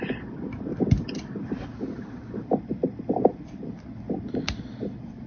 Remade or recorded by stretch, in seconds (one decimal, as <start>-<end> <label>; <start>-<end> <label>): 0.0-5.3 recorded